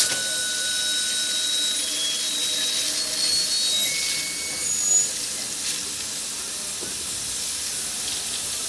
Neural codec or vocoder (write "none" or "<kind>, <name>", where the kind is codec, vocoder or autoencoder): none